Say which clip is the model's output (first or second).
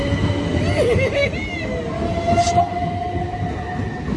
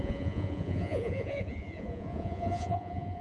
second